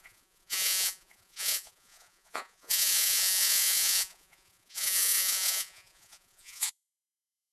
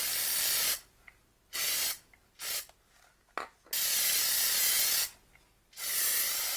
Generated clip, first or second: first